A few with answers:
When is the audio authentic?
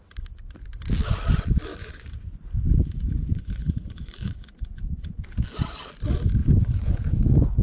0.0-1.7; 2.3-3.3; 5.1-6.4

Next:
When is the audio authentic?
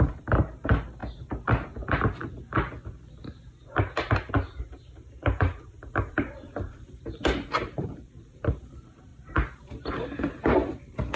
1.0-4.6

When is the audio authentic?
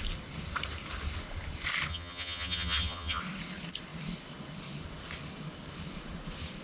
0.0-1.9; 3.2-6.6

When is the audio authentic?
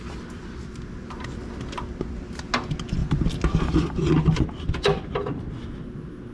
0.0-6.3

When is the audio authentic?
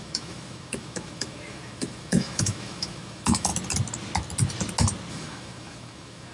3.5-5.1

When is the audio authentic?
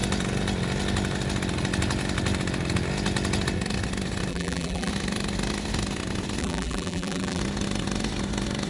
0.0-4.3; 4.9-6.4; 7.4-8.7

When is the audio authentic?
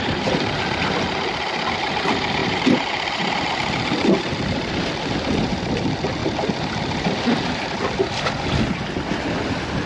0.0-2.4; 3.3-6.2; 7.7-9.9